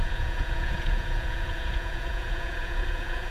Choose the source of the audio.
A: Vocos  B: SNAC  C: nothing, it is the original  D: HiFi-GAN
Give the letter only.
A